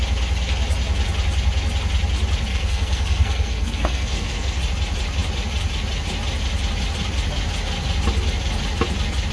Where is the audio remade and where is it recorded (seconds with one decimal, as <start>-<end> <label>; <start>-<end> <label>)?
0.0-2.5 recorded; 2.5-4.6 remade; 4.6-9.3 recorded